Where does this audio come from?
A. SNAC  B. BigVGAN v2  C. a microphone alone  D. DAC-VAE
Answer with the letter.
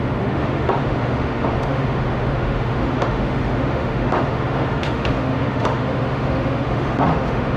D